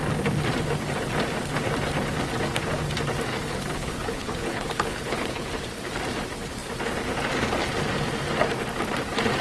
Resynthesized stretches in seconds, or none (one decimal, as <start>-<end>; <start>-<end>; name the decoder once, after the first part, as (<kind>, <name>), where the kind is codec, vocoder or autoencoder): 3.3-5.5 (codec, HILCodec)